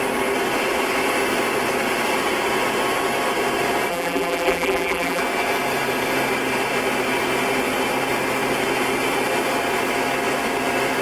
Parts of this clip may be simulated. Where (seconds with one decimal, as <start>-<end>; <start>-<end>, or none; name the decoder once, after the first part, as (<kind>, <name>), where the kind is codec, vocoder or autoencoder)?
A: 3.9-5.2 (vocoder, BigVGAN v2)